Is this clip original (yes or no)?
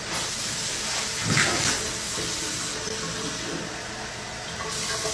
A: yes